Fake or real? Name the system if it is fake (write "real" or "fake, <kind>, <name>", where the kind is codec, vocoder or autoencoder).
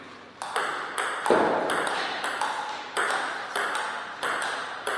real